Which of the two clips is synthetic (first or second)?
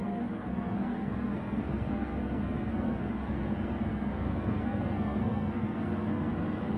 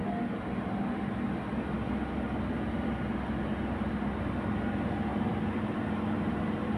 first